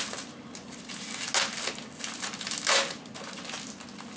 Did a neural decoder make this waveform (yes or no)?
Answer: no